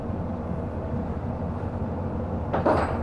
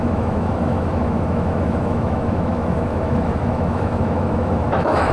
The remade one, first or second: second